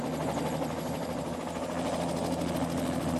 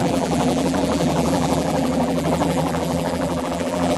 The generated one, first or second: second